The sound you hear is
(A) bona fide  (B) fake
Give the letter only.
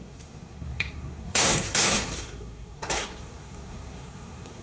B